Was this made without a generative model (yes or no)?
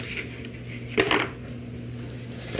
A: yes